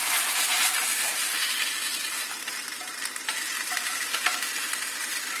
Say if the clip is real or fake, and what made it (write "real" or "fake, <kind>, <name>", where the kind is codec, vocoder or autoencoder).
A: fake, vocoder, BigVGAN v2